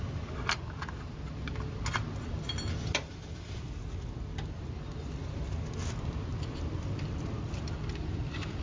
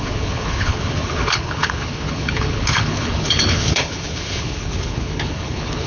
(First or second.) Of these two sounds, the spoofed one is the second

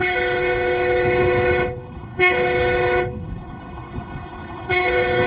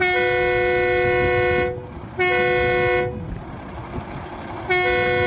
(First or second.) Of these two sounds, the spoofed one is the first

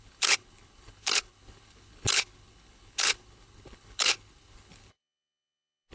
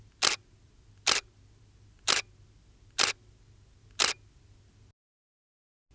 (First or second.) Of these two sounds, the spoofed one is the first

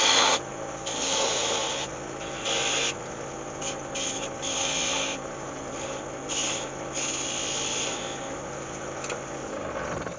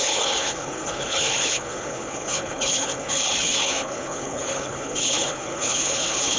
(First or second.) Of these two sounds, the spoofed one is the second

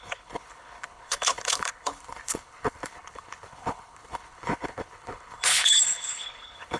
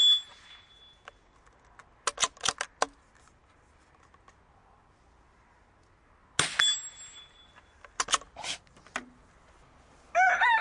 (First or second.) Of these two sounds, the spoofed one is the first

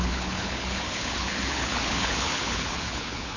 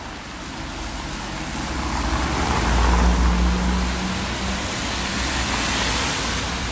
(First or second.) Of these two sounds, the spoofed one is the first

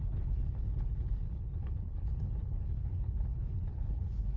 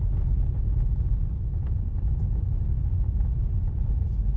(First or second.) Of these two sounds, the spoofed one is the first